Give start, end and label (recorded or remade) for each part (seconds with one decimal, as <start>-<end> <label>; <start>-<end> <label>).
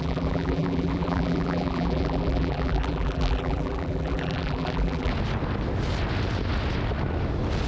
0.0-5.1 remade; 5.1-7.7 recorded